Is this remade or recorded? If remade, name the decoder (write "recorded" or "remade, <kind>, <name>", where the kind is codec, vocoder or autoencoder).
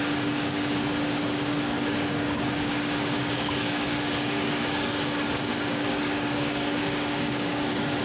remade, codec, DAC